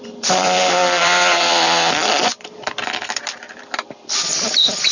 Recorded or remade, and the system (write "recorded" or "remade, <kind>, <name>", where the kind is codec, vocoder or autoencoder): remade, vocoder, BigVGAN v2